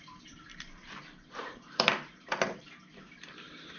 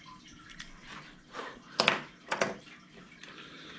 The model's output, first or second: first